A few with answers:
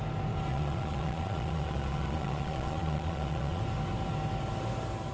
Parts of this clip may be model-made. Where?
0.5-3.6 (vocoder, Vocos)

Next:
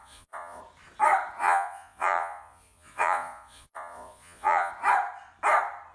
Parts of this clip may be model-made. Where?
0.0-0.6 (vocoder, Vocos); 1.4-4.7

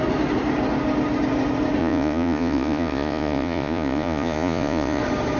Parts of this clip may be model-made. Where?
1.8-5.0 (vocoder, Vocos)